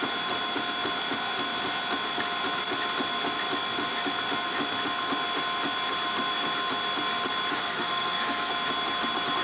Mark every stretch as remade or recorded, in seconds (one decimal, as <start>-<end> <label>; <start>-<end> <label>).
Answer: 0.0-7.5 recorded; 7.5-8.5 remade; 8.5-9.4 recorded